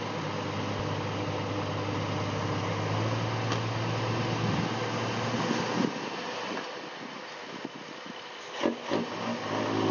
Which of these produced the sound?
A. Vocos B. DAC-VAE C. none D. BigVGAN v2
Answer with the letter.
C